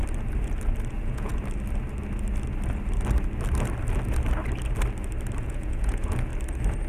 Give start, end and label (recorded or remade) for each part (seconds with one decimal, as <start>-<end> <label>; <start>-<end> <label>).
0.0-0.9 recorded; 0.9-1.3 remade; 1.3-5.4 recorded; 5.4-6.3 remade; 6.3-6.9 recorded